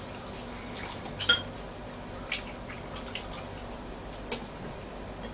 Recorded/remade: recorded